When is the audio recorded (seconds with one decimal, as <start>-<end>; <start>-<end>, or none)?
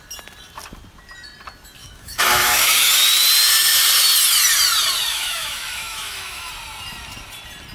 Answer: 0.0-1.8; 2.9-5.1; 6.5-7.7